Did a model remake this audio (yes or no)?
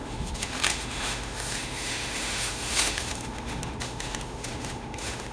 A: yes